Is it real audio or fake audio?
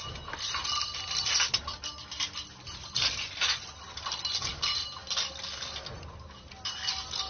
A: real